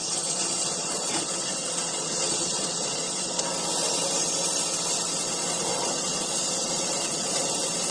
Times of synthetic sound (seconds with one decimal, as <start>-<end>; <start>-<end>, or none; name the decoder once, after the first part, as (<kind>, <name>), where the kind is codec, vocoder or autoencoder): 0.0-3.4 (vocoder, Vocos); 5.7-7.5